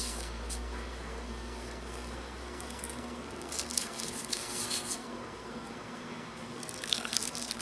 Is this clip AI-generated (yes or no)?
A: yes